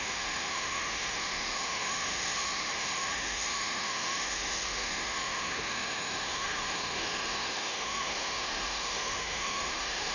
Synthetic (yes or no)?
yes